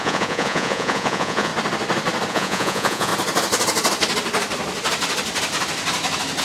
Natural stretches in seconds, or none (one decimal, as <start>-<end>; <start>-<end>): 1.5-2.3; 3.1-6.4